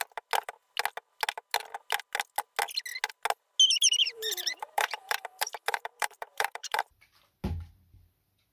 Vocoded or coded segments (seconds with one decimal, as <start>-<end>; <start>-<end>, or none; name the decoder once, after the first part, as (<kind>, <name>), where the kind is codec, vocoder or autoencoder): 4.0-7.0 (vocoder, BigVGAN v2)